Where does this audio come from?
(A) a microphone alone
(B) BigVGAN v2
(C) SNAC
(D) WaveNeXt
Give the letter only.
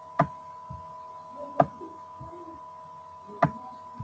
A